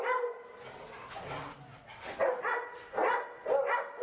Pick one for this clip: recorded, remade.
recorded